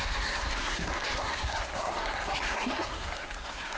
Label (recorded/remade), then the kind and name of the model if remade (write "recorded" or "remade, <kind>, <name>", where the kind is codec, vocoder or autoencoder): remade, codec, SNAC